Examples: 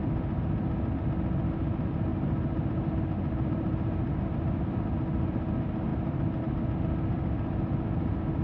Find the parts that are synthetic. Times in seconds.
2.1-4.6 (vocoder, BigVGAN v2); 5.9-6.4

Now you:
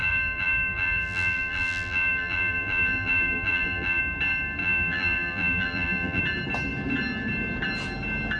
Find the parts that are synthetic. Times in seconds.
0.0-4.0 (vocoder, BigVGAN v2); 4.6-6.2